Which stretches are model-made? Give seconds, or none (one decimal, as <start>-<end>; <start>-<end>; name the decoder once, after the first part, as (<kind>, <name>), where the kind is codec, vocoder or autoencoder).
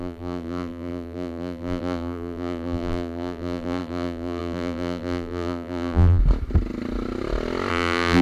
0.0-6.2 (vocoder, BigVGAN v2); 7.7-8.2